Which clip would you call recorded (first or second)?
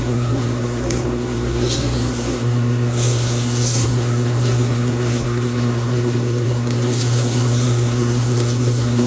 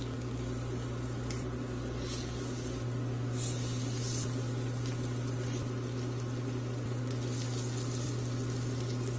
second